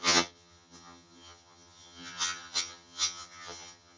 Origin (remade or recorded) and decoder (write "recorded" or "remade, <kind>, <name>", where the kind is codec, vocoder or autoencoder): remade, vocoder, HiFi-GAN